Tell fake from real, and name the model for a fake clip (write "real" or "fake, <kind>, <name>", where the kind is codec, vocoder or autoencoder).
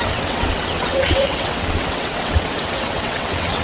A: fake, vocoder, WaveNeXt